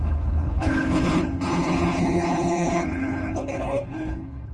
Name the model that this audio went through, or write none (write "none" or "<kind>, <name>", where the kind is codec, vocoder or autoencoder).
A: codec, HILCodec